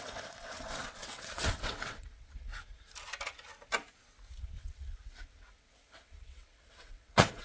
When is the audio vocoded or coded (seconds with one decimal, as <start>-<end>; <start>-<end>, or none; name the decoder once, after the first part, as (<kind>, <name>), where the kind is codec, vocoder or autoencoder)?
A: 0.0-2.6 (vocoder, WaveNeXt); 4.4-7.4

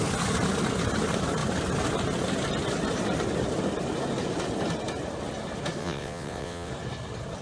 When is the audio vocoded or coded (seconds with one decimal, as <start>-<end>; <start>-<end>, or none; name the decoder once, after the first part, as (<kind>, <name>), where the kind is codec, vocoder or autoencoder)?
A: 5.8-6.7 (vocoder, WaveNeXt)

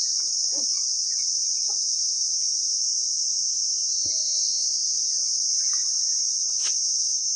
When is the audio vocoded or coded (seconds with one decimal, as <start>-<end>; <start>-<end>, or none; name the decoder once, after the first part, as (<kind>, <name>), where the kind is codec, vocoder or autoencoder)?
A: 4.2-5.1 (vocoder, WaveNeXt)

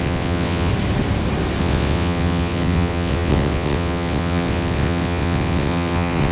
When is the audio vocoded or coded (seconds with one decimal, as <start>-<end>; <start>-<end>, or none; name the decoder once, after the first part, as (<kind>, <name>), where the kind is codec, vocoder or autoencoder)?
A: 0.0-0.7 (vocoder, WaveNeXt); 1.6-6.3

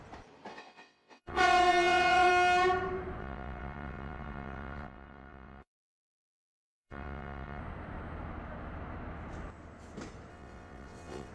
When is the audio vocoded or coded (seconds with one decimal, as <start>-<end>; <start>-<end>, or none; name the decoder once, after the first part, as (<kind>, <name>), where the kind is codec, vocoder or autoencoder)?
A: 0.5-2.3 (vocoder, WaveNeXt); 3.2-7.6; 10.3-11.3

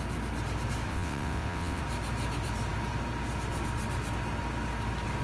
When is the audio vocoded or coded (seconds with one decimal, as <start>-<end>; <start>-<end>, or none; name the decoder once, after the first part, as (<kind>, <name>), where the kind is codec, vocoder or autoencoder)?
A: 0.9-1.8 (vocoder, WaveNeXt)